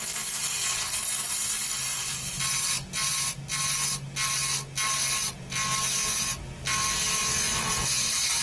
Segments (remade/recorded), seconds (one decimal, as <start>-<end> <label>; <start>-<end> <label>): 0.0-8.4 recorded